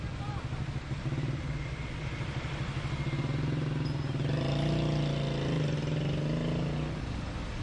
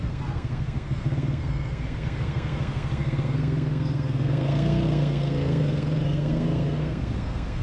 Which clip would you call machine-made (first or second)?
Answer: second